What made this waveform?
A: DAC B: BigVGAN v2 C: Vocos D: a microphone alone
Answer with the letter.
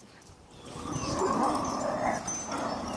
D